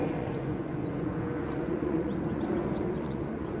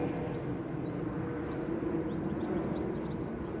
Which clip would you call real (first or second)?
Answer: second